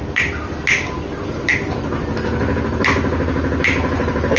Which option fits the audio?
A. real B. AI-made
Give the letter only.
A